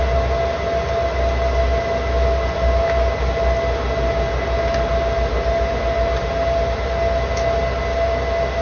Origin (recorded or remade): recorded